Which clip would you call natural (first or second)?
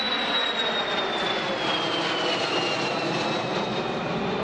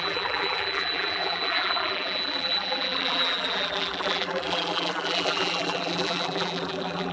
first